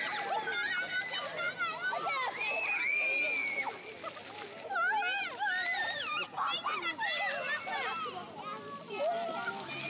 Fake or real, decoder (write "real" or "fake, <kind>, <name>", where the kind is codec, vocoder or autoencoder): real